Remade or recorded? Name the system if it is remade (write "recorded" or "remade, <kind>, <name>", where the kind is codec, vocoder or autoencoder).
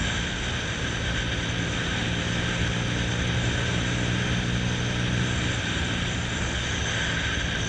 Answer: recorded